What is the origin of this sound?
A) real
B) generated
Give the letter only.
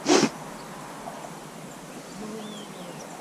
A